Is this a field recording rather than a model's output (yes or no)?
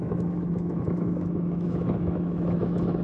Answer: no